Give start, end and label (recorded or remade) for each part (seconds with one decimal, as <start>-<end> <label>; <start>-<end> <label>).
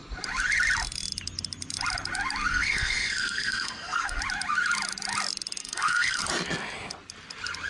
0.0-2.5 recorded; 2.5-4.2 remade; 4.2-5.6 recorded; 5.6-6.2 remade; 6.2-7.7 recorded